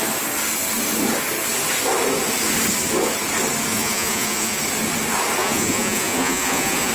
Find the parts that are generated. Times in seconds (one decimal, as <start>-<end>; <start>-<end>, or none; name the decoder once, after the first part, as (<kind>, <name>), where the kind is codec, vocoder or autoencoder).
3.7-4.6 (vocoder, Vocos); 5.4-6.9